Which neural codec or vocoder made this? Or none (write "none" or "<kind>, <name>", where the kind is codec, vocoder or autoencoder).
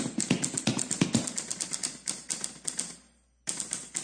none